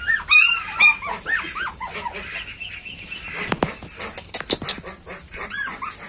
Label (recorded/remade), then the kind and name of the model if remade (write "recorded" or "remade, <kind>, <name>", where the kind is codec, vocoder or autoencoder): recorded